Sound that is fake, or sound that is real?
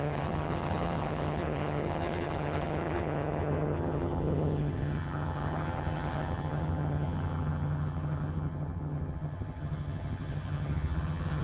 fake